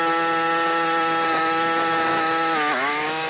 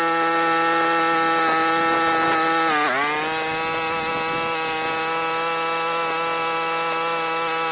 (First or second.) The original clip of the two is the second